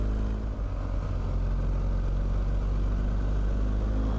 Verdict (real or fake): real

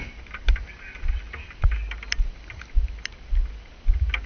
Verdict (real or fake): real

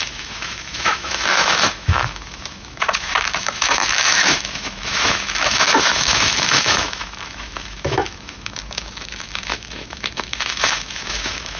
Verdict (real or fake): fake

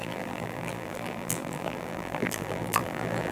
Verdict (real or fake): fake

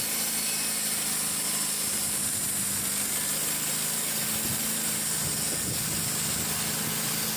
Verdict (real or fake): real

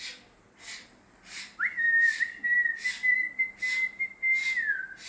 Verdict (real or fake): real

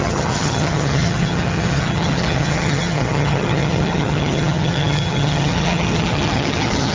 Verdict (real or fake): fake